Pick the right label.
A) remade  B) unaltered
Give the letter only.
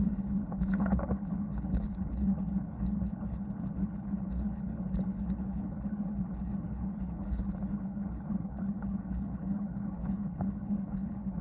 A